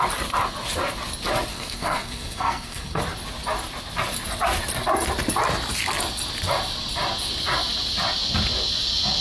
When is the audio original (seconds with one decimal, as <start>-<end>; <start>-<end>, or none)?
0.0-1.5; 3.0-9.2